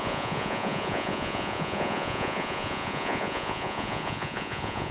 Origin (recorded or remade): remade